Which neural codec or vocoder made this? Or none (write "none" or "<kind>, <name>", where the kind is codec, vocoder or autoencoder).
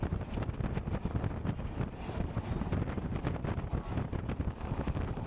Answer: vocoder, BigVGAN v2